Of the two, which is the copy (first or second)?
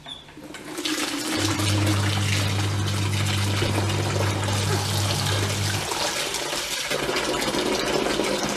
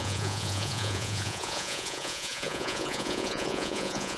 second